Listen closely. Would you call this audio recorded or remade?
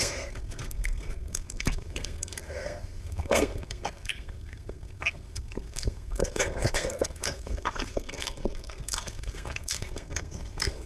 remade